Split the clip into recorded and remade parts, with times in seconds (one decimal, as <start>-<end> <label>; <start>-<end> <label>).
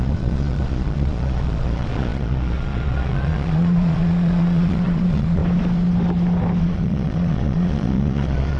0.0-5.4 remade; 5.4-6.6 recorded; 6.6-8.6 remade